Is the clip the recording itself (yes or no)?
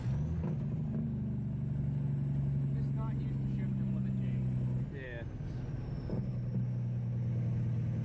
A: yes